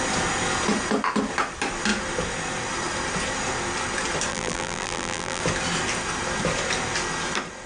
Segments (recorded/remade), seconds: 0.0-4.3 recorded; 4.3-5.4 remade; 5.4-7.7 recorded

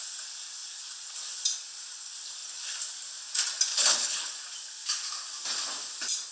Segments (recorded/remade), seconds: 0.0-3.7 recorded; 3.7-4.3 remade; 4.3-6.3 recorded